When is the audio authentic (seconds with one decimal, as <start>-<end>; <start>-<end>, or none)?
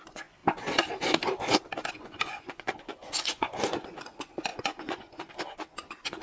0.4-1.9